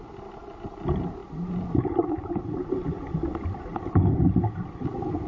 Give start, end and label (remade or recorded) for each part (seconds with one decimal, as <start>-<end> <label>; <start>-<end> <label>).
0.0-5.3 recorded